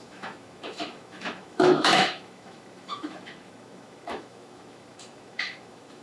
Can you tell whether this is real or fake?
fake